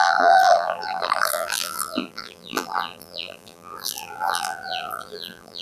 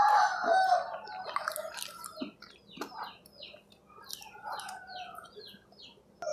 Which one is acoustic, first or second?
second